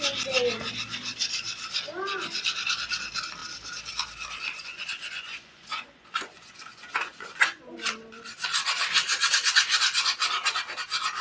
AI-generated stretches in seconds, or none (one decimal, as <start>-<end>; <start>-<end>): 4.6-7.6